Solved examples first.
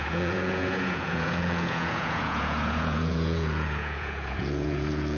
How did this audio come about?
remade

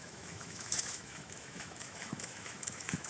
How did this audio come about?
remade